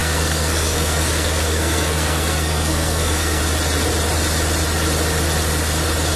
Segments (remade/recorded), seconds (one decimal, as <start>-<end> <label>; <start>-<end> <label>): 0.0-3.4 remade; 3.4-6.2 recorded